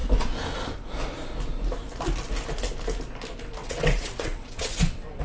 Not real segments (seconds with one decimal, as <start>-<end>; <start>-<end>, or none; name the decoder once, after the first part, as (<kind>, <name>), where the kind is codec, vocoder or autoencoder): 3.6-5.2 (vocoder, WaveNeXt)